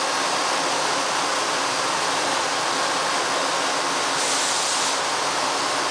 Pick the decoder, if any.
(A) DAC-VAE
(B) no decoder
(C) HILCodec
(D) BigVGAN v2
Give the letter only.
B